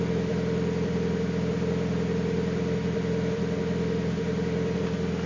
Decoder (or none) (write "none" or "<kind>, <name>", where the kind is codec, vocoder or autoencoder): none